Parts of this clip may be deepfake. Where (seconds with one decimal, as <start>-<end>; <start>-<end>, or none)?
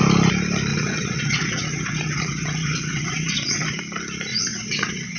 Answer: 0.7-3.8; 4.3-5.2